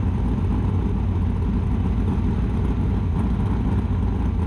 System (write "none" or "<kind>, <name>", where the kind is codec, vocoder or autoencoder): none